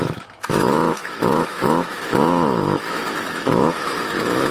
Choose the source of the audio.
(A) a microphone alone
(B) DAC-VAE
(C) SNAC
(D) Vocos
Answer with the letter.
B